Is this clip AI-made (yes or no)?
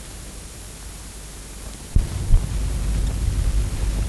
no